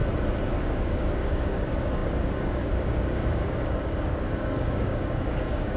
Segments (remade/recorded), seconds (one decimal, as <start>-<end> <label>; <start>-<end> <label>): 0.0-0.6 recorded; 0.6-5.8 remade

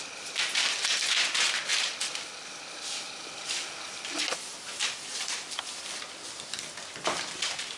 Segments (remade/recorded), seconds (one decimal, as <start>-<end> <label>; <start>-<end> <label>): 0.0-7.8 recorded

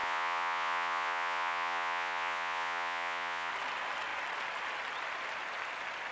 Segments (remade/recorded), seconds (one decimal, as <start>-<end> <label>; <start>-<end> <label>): 0.0-3.5 remade; 3.5-6.1 recorded

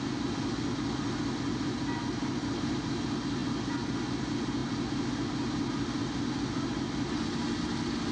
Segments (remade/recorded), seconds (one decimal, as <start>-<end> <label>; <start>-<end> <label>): 0.0-8.1 recorded

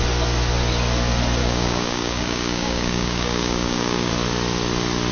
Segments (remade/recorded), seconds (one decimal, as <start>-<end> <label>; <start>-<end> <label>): 0.0-1.4 recorded; 1.4-4.1 remade; 4.1-5.1 recorded

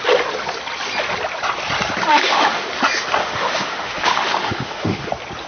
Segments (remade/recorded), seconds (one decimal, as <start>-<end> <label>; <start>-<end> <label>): 0.0-2.1 recorded; 2.1-2.7 remade; 2.7-3.2 recorded; 3.2-5.1 remade; 5.1-5.5 recorded